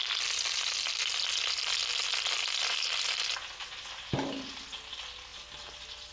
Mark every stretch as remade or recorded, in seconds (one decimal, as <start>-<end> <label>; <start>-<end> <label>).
0.0-6.1 recorded